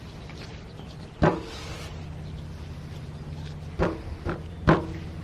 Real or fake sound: real